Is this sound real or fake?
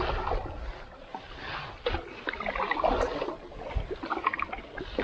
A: real